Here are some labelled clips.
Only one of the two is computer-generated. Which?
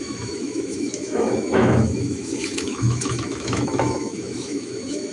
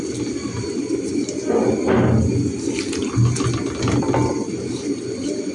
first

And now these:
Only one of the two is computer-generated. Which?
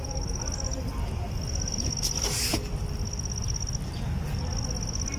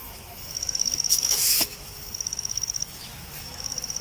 second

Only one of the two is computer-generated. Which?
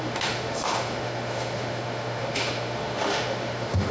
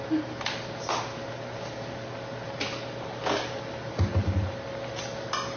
first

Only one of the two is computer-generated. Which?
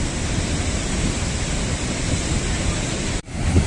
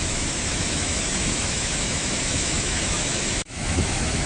second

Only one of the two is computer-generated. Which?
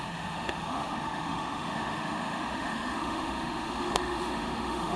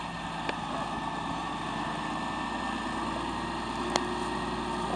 first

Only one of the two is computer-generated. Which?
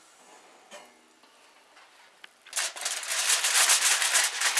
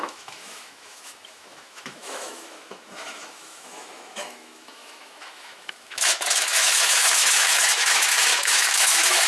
second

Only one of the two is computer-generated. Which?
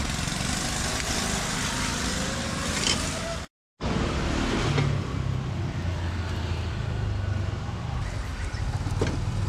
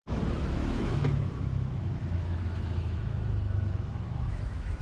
second